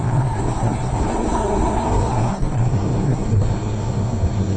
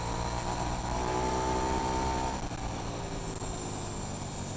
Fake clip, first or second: first